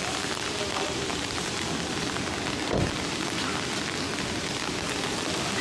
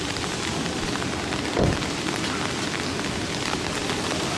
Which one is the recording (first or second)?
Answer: first